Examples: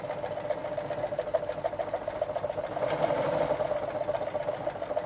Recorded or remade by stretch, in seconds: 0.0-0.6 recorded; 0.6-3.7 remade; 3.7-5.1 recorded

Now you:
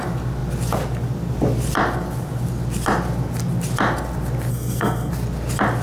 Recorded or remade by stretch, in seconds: 0.0-4.5 recorded; 4.5-5.1 remade; 5.1-5.8 recorded